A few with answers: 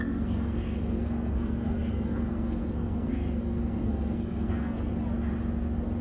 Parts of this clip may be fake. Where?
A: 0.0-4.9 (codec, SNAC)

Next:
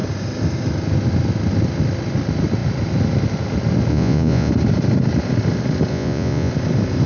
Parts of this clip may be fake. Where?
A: 3.9-4.5 (vocoder, Vocos); 5.9-6.5

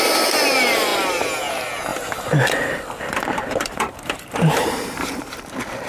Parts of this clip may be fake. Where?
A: 1.9-5.4 (vocoder, BigVGAN v2)

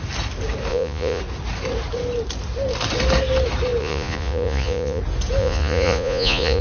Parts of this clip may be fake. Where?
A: 0.7-1.2 (vocoder, Vocos); 3.8-5.0; 5.4-6.6

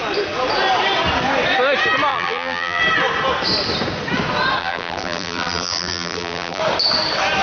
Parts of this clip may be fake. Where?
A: 2.1-2.8 (vocoder, BigVGAN v2); 4.6-6.6

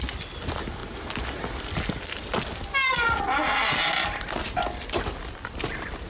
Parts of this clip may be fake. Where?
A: none

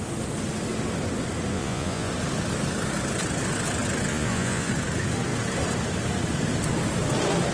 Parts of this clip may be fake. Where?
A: 1.5-2.1 (vocoder, Vocos); 4.1-4.7